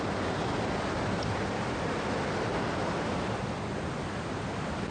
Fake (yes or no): no